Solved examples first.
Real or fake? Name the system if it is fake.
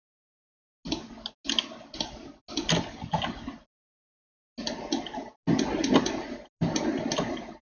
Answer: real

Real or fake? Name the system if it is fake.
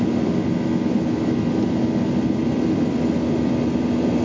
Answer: real